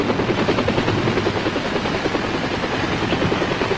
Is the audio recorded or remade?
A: recorded